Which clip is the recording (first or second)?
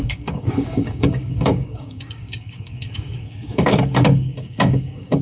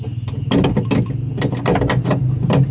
second